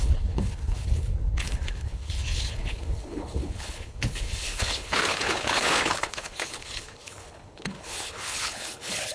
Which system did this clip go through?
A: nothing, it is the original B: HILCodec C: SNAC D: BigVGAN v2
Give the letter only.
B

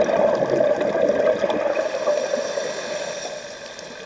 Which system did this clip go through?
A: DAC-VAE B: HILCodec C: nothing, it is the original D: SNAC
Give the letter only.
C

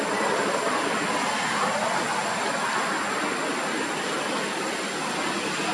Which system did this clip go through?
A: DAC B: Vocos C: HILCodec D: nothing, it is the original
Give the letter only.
D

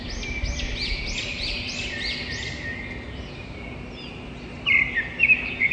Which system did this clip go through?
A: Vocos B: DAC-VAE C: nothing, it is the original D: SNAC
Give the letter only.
C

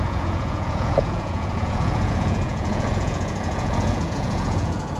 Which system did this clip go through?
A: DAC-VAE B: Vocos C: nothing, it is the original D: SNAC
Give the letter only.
B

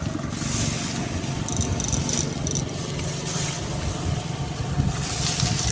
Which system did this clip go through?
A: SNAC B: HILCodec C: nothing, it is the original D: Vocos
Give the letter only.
C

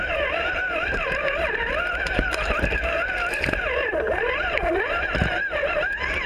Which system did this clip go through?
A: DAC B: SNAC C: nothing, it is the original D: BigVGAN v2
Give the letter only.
D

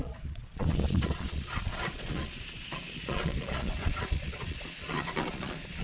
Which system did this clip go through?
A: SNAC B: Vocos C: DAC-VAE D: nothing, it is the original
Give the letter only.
B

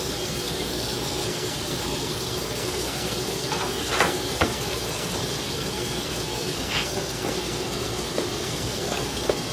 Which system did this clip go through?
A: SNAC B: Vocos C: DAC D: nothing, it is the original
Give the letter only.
A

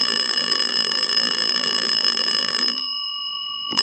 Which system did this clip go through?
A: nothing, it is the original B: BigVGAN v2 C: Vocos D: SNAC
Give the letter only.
B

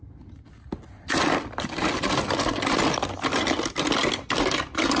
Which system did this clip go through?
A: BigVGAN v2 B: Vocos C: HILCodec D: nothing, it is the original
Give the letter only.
D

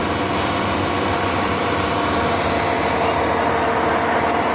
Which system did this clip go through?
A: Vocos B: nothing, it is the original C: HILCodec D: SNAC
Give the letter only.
B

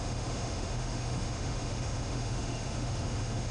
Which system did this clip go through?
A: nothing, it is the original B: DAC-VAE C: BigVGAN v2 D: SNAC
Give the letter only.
B